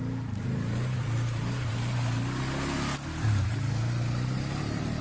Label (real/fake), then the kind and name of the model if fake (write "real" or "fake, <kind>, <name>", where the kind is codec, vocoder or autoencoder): real